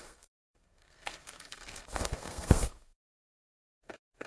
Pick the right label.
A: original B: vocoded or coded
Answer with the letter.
B